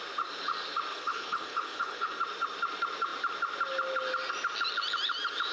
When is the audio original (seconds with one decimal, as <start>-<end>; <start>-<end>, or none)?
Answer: 0.0-0.9; 2.2-5.5